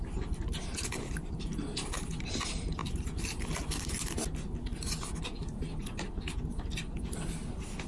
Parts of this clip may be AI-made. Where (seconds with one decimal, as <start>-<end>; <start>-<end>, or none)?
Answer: none